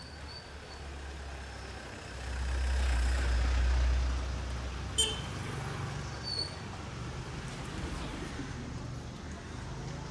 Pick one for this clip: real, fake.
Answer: real